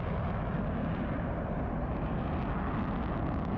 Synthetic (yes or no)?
no